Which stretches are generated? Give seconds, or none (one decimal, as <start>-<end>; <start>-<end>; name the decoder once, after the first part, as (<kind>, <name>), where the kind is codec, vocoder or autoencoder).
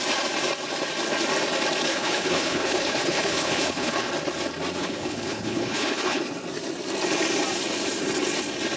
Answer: 1.9-4.1 (codec, HILCodec); 4.8-6.2